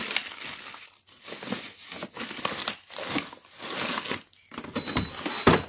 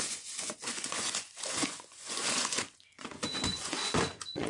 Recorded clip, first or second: first